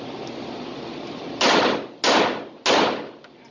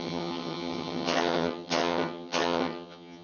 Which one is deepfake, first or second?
second